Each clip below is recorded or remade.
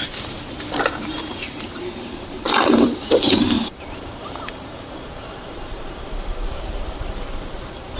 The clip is remade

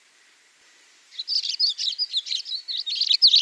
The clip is recorded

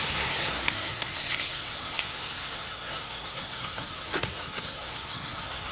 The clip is remade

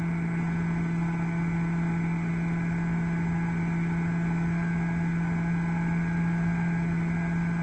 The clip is recorded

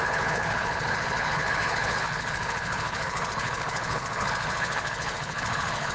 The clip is remade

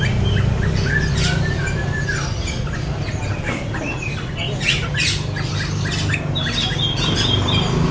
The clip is recorded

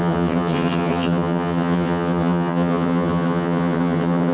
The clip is remade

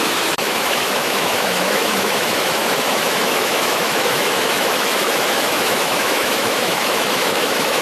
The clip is remade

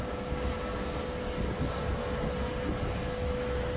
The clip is recorded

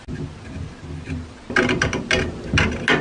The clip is recorded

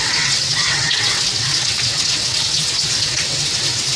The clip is remade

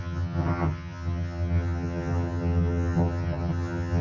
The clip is remade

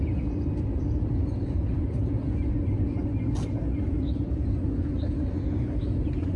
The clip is recorded